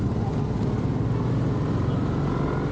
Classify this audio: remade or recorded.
recorded